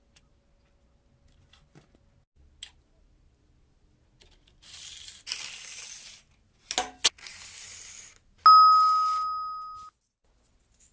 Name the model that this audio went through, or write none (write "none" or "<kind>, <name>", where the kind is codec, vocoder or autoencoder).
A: none